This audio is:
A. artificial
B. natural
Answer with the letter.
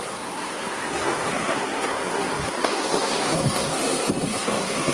A